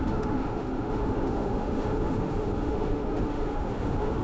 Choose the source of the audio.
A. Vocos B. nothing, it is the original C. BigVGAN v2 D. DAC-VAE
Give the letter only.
D